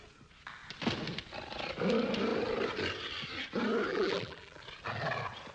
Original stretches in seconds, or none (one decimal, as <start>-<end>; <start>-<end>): 0.0-3.9; 4.6-5.5